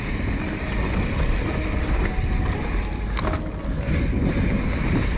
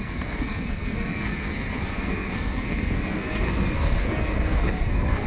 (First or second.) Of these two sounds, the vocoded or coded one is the second